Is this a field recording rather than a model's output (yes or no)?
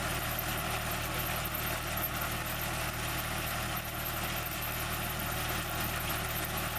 yes